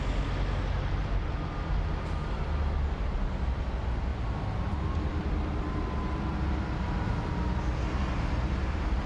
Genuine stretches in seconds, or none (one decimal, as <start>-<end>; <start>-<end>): 0.0-9.1